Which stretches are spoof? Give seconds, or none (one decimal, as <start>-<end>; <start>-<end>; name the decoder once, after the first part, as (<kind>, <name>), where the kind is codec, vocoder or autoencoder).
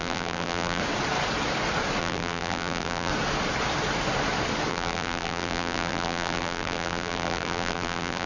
0.0-0.8 (vocoder, BigVGAN v2); 2.0-3.1; 4.7-8.3